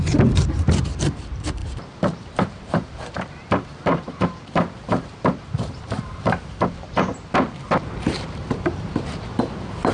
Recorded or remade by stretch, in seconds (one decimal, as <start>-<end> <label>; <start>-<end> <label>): 0.0-9.9 remade